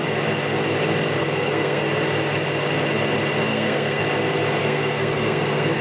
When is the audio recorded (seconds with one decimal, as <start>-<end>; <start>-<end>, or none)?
0.0-1.2; 1.8-3.5; 4.0-4.6